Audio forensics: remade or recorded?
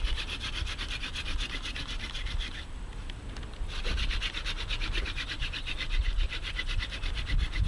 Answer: recorded